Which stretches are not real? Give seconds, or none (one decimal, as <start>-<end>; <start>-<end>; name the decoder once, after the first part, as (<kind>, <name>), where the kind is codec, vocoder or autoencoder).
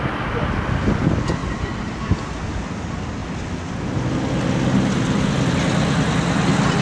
none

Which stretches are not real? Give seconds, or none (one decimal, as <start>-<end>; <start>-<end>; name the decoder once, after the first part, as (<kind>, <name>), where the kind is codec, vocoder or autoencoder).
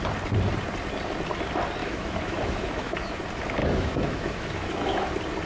1.8-3.2 (autoencoder, DAC-VAE); 3.6-5.1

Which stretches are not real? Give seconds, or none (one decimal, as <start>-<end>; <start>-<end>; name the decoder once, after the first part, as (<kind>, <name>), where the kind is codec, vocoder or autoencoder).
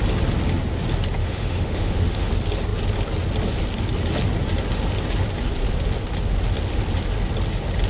1.2-2.3 (autoencoder, DAC-VAE)